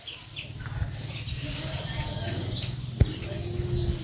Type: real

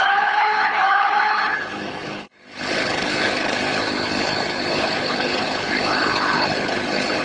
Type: fake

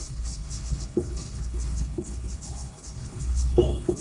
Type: fake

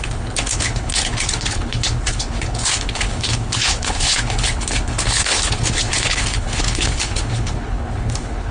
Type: fake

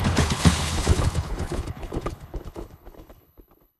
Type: fake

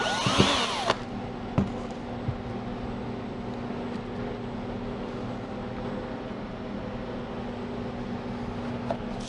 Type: real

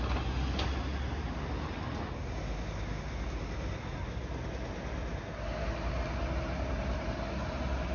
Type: real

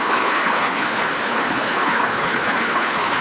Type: fake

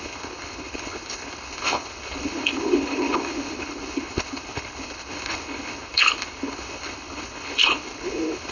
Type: fake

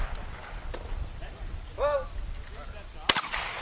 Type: real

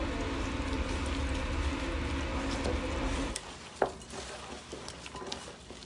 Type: real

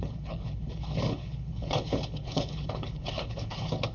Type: fake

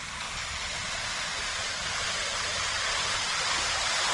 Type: real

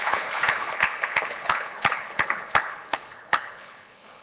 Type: fake